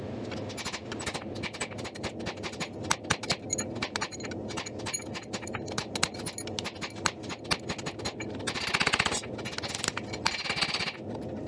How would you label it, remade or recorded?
recorded